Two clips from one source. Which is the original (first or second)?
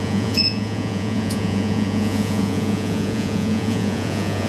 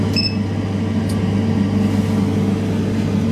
second